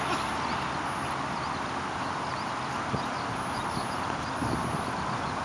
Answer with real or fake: real